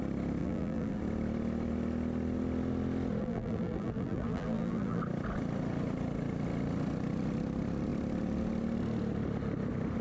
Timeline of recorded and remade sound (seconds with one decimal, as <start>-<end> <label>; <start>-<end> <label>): 0.0-0.4 recorded; 0.4-1.0 remade; 1.0-3.2 recorded; 3.2-5.0 remade; 5.0-10.0 recorded